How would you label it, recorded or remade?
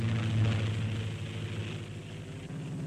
recorded